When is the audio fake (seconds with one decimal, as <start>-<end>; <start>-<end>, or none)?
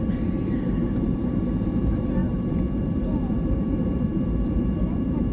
0.0-5.3